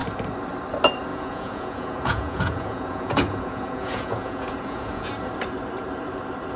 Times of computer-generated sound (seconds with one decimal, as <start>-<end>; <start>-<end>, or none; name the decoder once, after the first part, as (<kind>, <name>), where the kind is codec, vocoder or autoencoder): 1.1-5.1 (vocoder, Vocos)